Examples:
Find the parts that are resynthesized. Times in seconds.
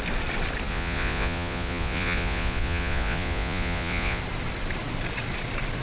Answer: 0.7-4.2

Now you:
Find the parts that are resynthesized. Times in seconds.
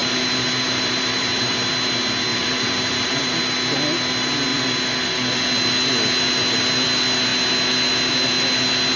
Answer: 0.0-1.7; 2.3-3.4